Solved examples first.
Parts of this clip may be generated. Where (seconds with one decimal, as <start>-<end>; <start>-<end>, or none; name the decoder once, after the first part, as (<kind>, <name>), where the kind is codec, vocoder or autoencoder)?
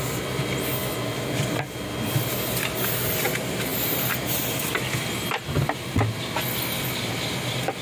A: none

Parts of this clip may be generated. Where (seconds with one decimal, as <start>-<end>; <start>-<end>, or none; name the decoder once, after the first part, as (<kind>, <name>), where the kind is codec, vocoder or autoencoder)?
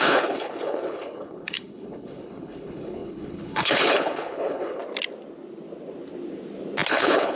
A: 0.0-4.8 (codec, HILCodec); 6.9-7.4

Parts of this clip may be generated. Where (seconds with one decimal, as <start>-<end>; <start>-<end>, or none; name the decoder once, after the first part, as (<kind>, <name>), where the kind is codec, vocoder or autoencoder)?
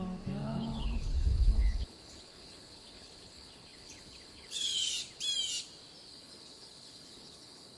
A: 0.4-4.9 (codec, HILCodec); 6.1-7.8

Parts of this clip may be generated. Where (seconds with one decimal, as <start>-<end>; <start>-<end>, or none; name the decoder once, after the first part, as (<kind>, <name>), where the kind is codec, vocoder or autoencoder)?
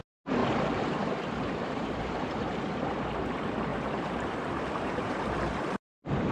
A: 0.4-2.6 (vocoder, BigVGAN v2); 3.7-6.3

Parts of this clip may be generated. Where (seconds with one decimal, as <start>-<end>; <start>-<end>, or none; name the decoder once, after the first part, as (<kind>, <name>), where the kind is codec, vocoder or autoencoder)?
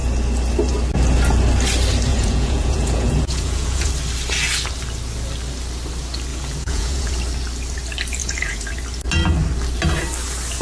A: 2.1-3.9 (vocoder, Vocos); 6.3-7.1; 8.2-8.7